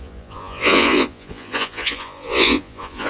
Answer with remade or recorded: remade